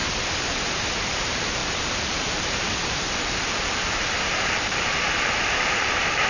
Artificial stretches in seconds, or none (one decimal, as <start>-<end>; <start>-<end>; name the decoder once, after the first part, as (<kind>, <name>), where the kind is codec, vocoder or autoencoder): 1.0-6.3 (vocoder, BigVGAN v2)